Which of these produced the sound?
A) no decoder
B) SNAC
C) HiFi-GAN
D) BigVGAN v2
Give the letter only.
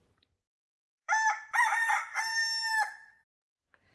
D